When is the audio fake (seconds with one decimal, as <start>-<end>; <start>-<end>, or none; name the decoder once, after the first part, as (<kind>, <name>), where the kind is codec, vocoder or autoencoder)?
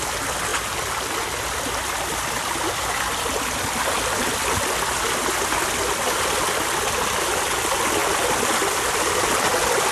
none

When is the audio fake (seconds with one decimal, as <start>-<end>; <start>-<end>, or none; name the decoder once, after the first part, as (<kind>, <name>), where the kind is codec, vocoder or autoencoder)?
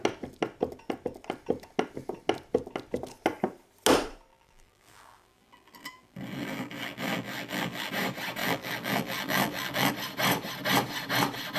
4.3-7.9 (vocoder, BigVGAN v2); 8.4-9.9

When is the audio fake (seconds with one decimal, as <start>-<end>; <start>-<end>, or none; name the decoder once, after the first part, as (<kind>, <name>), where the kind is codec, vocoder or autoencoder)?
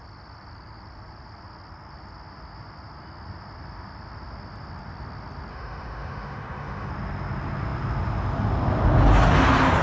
5.5-6.9 (autoencoder, DAC-VAE)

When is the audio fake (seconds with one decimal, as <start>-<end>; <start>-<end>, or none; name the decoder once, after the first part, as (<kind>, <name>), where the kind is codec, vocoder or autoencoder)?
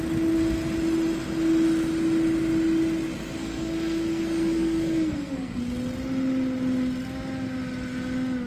3.4-5.6 (codec, SNAC)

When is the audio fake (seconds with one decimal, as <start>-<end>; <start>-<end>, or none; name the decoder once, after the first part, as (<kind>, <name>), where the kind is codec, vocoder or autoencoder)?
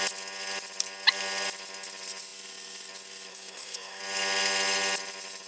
3.3-4.0 (codec, SNAC)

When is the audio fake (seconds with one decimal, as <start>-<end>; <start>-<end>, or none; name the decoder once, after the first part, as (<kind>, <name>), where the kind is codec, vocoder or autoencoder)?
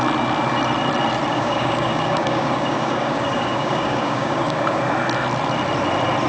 1.3-4.8 (codec, DAC)